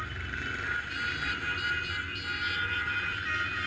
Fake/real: real